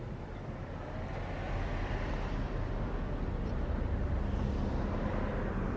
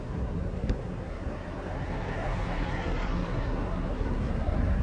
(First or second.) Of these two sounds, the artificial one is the second